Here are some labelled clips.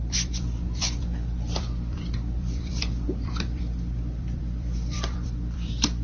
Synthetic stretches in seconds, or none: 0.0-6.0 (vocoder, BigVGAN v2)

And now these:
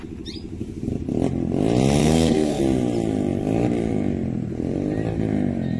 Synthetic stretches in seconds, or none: 2.0-2.6 (codec, SNAC)

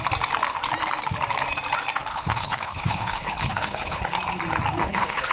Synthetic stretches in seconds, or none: 2.1-4.0 (codec, HILCodec); 4.8-5.3

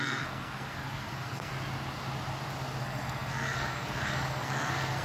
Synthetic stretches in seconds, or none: 0.0-1.5 (codec, SNAC); 2.8-5.0

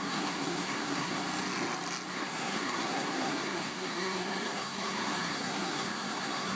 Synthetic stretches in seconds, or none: 0.0-1.2 (codec, SNAC); 2.1-6.6

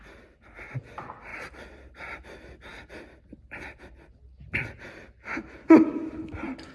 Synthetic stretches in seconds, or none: 1.3-2.0 (vocoder, BigVGAN v2); 2.7-4.9